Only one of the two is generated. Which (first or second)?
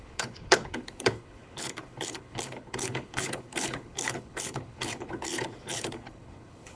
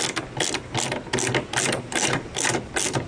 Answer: first